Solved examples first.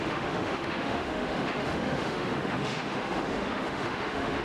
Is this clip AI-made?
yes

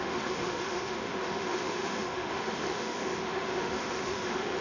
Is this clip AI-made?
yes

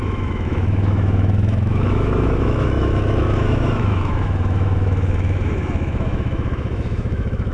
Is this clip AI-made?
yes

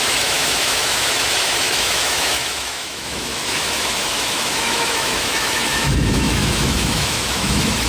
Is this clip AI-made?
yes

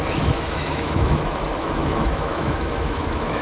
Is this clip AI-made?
yes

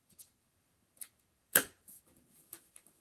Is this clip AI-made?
yes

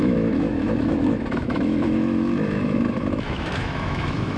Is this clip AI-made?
yes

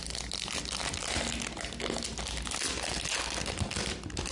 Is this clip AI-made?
no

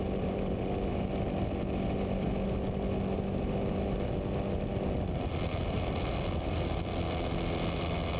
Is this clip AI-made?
no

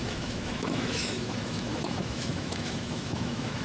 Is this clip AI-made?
yes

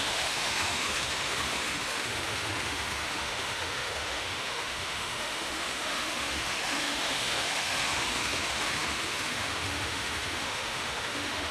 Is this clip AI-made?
yes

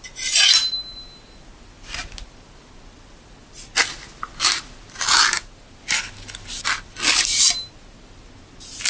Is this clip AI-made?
no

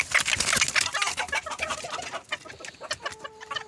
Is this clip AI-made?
no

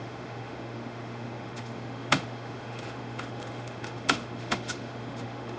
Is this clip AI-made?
yes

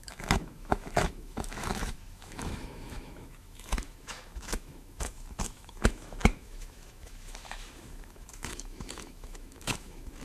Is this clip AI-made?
yes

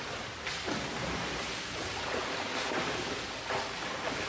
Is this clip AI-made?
no